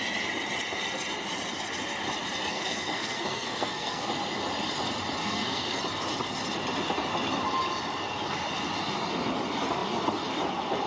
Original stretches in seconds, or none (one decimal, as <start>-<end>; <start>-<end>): 0.0-2.5; 4.1-5.2; 5.8-10.9